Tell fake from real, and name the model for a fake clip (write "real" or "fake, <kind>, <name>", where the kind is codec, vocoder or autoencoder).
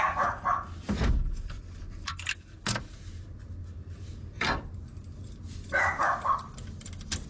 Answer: real